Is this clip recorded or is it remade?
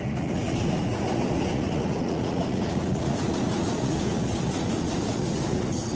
remade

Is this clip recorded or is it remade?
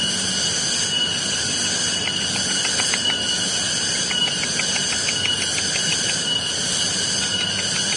recorded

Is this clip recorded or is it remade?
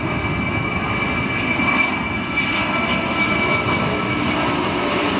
recorded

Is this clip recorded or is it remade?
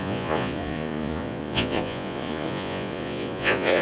remade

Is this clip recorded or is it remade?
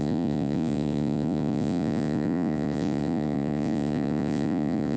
remade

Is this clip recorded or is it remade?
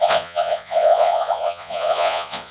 remade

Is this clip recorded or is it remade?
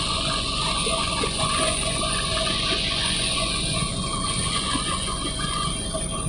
remade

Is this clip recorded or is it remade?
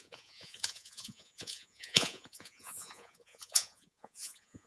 remade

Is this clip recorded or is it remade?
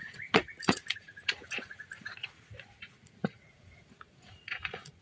remade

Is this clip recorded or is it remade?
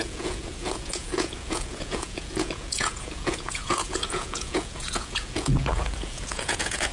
remade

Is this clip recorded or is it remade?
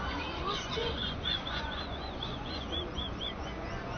remade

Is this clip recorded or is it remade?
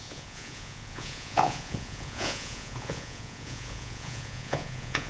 remade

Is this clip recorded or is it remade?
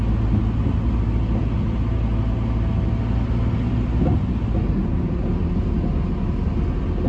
recorded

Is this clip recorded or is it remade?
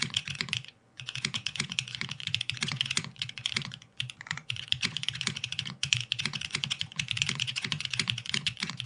remade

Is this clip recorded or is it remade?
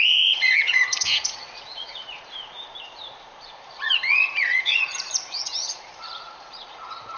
remade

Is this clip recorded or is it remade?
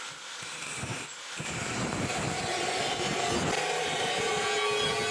recorded